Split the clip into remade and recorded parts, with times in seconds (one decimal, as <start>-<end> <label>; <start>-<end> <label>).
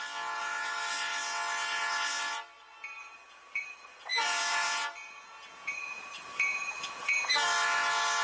0.0-3.0 recorded; 3.0-7.2 remade; 7.2-8.2 recorded